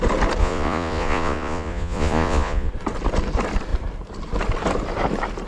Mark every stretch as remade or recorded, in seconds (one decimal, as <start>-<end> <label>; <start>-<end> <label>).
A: 0.0-0.4 recorded; 0.4-2.7 remade; 2.7-5.5 recorded